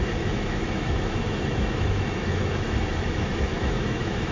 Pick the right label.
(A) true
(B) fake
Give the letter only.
B